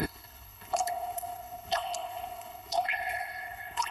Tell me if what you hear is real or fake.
fake